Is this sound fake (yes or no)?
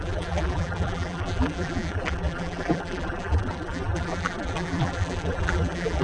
yes